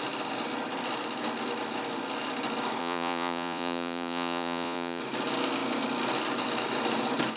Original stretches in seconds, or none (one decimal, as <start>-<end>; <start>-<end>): 0.0-2.8; 5.0-7.4